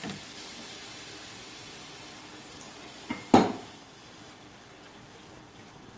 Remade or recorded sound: remade